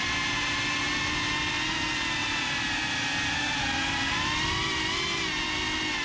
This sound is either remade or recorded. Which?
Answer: recorded